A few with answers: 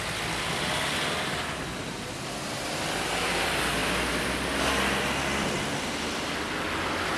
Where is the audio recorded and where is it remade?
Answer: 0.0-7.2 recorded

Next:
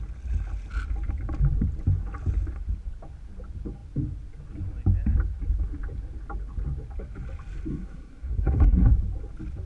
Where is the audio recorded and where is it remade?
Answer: 0.0-7.7 recorded; 7.7-8.9 remade; 8.9-9.7 recorded

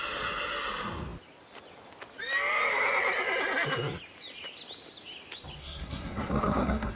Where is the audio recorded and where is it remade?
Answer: 0.0-5.6 recorded; 5.6-7.0 remade

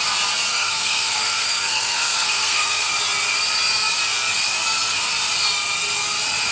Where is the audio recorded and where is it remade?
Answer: 0.0-0.5 recorded; 0.5-2.9 remade; 2.9-6.5 recorded

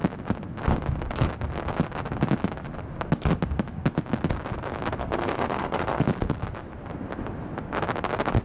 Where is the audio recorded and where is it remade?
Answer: 0.0-5.0 recorded; 5.0-6.0 remade; 6.0-8.4 recorded

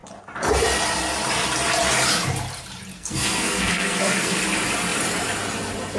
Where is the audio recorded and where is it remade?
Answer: 0.0-2.9 recorded; 2.9-4.4 remade; 4.4-6.0 recorded